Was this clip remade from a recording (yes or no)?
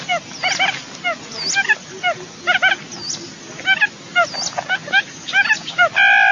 no